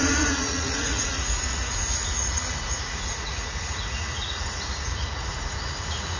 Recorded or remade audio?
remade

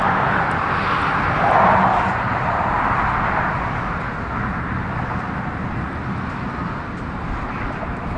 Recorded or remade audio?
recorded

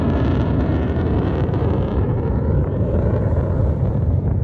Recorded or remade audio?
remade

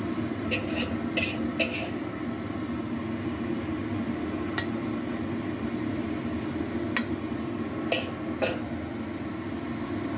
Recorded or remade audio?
recorded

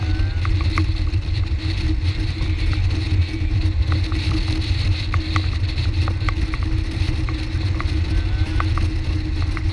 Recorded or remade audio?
recorded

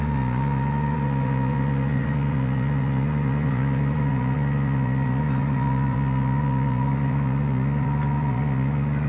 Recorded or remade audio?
remade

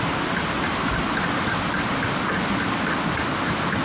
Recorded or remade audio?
recorded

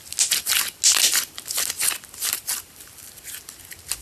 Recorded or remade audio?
recorded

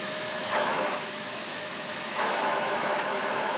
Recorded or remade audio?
remade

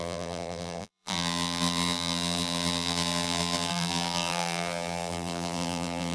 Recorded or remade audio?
remade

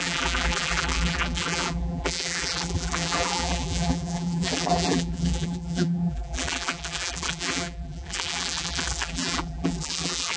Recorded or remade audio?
remade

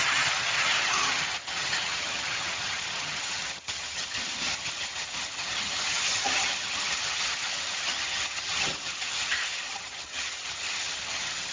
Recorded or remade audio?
remade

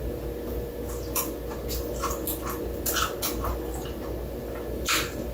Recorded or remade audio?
recorded